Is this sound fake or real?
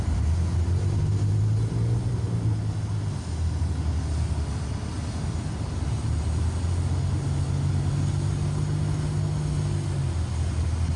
real